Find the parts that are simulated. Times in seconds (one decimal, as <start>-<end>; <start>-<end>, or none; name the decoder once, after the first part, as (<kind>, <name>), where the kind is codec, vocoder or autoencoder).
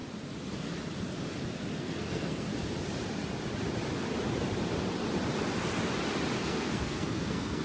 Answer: 1.8-2.5 (codec, SNAC); 6.4-7.6